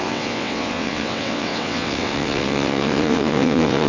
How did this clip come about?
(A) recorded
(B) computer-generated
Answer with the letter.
B